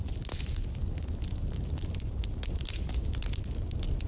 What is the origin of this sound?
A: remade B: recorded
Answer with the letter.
B